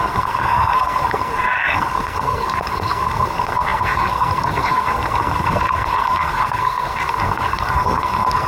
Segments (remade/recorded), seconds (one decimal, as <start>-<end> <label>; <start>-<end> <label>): 0.0-8.5 remade